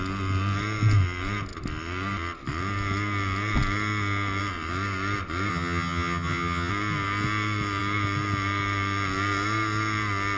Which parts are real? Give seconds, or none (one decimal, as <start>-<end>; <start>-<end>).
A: 0.0-5.5; 6.7-10.4